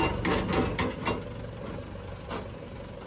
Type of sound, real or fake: real